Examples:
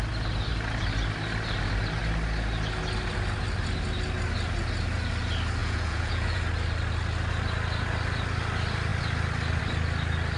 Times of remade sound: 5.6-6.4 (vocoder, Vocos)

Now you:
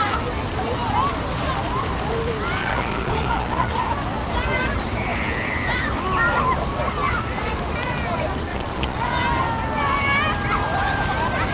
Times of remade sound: 2.6-3.7 (vocoder, Vocos); 8.5-9.1

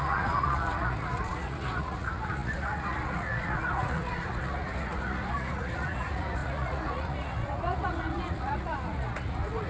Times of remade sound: 0.0-9.7 (vocoder, Vocos)

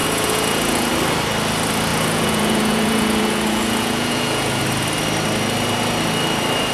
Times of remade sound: 0.0-0.9 (vocoder, Vocos); 1.9-4.6

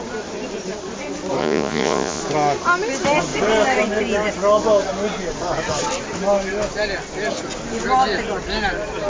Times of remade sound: 1.4-2.2 (vocoder, Vocos)

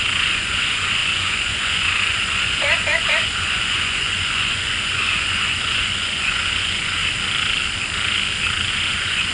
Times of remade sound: 0.0-7.0 (vocoder, Vocos); 8.7-9.3

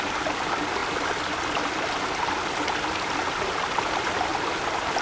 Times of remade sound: none

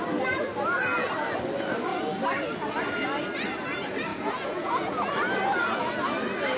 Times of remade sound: 4.1-4.9 (vocoder, Vocos)